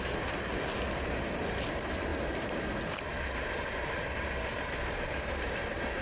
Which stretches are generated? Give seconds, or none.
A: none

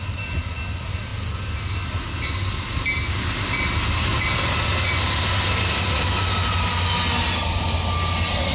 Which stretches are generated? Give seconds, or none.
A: none

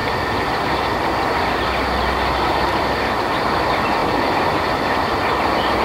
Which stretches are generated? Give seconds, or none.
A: none